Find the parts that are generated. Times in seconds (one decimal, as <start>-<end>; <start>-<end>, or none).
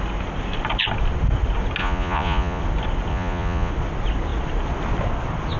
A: 1.8-2.6; 3.1-3.7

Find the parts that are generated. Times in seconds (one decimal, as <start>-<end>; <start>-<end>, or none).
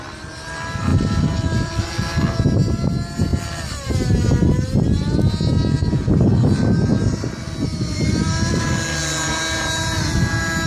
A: 0.9-1.9; 3.3-3.9; 6.9-8.6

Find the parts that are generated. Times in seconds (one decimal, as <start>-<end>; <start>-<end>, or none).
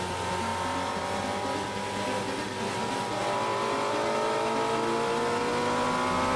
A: none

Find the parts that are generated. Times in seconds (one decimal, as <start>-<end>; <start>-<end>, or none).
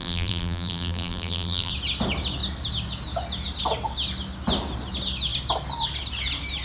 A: 0.0-1.7